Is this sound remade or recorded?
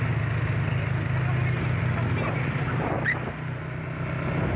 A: recorded